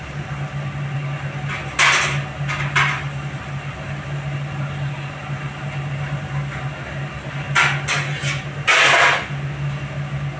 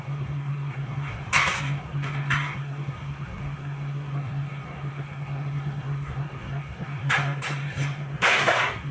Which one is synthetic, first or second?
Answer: second